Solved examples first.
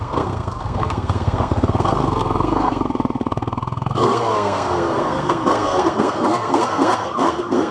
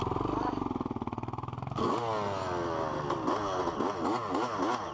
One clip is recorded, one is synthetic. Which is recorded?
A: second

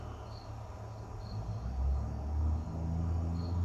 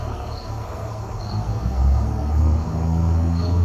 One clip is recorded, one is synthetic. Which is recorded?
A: first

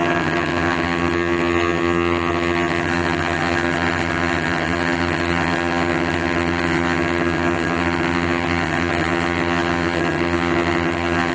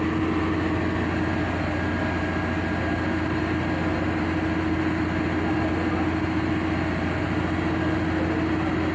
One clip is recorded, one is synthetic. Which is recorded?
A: second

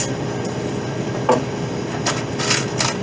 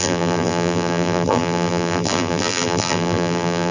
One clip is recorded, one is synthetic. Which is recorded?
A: first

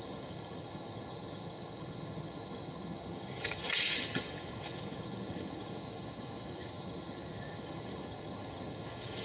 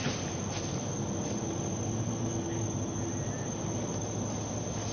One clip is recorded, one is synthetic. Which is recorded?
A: second